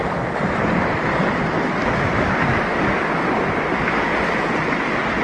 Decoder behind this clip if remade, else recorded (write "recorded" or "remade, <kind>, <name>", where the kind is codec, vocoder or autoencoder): recorded